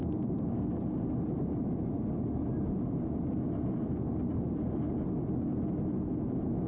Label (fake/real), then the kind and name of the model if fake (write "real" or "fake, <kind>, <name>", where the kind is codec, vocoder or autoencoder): real